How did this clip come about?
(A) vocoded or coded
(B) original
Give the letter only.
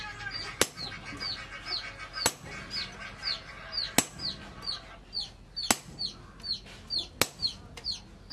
B